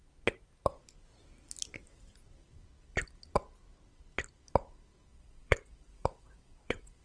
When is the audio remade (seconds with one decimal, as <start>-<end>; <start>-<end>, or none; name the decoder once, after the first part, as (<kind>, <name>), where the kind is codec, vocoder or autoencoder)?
5.1-7.0 (vocoder, Vocos)